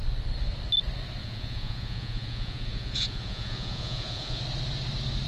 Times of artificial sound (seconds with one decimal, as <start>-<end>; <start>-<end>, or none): 1.2-4.4